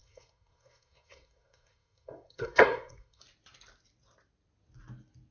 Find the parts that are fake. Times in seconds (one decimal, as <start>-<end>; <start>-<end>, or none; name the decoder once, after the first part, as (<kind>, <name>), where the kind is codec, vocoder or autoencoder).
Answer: 0.0-3.2 (codec, SNAC)

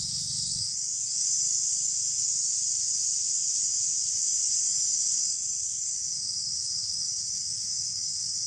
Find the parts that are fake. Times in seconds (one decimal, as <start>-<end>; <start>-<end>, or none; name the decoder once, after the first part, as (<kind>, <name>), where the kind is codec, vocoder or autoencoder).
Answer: 0.0-8.5 (codec, DAC)

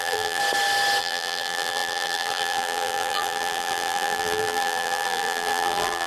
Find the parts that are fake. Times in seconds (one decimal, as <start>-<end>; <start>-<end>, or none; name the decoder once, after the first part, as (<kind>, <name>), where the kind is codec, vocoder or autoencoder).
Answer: 0.0-0.4 (vocoder, BigVGAN v2); 1.0-6.1

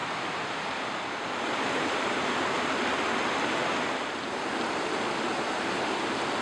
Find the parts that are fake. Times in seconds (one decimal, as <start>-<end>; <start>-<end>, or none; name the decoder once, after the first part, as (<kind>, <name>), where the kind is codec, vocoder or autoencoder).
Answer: 0.0-2.8 (vocoder, BigVGAN v2)

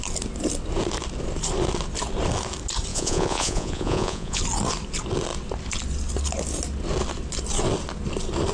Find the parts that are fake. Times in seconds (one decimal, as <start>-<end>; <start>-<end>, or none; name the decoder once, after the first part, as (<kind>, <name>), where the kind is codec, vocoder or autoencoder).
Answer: 2.9-4.4 (vocoder, Vocos)

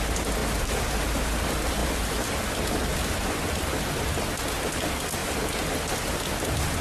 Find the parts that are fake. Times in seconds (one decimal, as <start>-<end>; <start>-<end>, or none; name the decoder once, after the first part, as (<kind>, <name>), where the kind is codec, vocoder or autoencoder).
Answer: 1.8-3.2 (vocoder, BigVGAN v2)

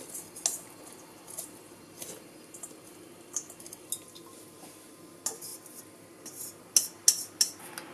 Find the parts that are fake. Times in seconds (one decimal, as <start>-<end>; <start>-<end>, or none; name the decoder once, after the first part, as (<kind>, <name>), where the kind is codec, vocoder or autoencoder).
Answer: none

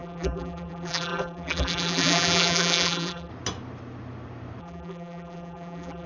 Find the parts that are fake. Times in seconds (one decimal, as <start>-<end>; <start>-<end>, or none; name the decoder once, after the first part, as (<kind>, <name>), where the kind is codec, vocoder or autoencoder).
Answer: 0.0-3.3 (vocoder, BigVGAN v2); 4.6-6.1